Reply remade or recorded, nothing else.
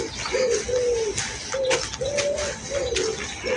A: recorded